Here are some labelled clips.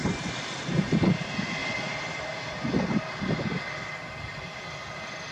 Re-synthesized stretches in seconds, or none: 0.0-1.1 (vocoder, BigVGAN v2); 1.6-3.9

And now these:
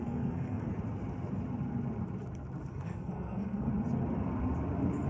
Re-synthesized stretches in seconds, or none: 0.0-0.7 (codec, SNAC); 2.7-3.7

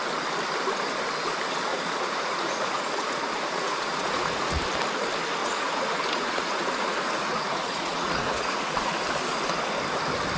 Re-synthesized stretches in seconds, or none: 1.7-4.6 (vocoder, Vocos); 5.4-8.9

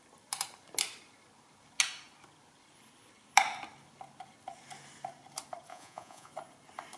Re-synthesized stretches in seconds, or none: 5.7-6.3 (vocoder, Vocos)

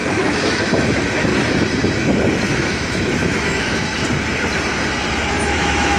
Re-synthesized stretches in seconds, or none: 0.0-1.3 (autoencoder, DAC-VAE); 2.5-3.9; 5.3-6.0

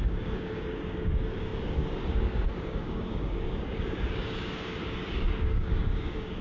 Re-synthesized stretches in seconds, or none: 0.0-6.4 (codec, DAC)

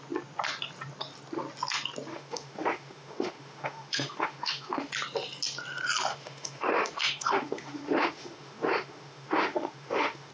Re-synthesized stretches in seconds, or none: 2.1-4.9 (autoencoder, DAC-VAE); 6.1-10.3

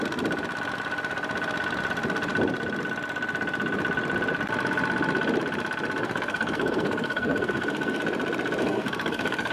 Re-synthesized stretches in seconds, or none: 6.0-8.0 (codec, SNAC); 8.6-9.5